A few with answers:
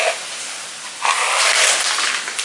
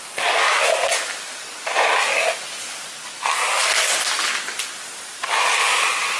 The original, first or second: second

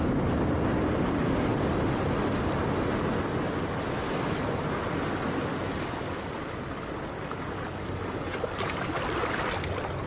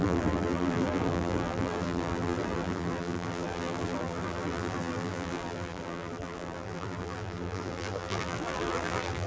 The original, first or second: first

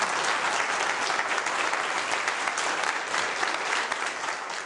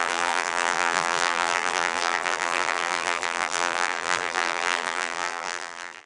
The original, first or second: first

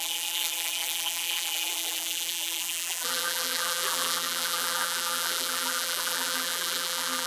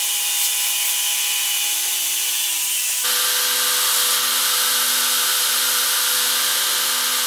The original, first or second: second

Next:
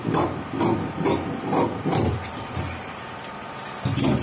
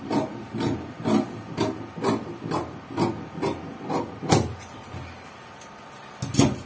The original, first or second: second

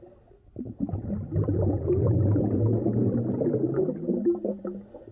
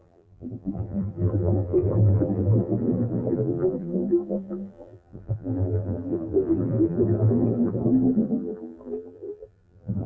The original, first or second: first